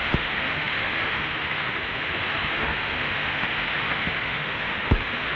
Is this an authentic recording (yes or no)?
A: no